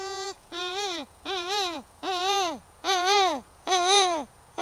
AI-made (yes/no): yes